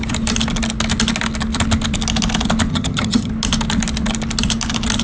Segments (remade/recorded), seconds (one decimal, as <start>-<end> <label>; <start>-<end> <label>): 0.0-2.7 recorded; 2.7-3.3 remade; 3.3-5.0 recorded